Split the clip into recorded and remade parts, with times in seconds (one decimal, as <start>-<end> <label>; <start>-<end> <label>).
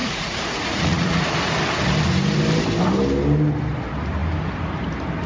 0.0-1.2 remade; 1.2-5.3 recorded